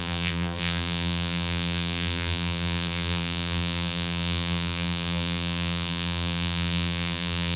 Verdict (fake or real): fake